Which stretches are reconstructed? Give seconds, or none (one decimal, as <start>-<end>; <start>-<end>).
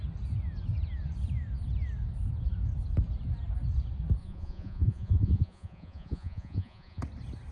4.2-7.0